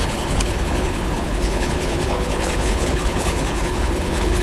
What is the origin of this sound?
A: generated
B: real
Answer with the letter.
A